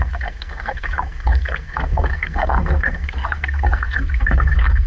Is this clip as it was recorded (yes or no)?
no